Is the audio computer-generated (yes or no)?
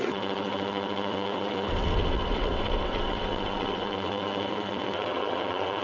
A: yes